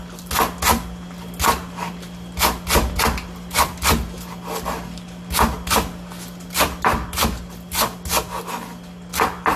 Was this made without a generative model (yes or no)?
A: yes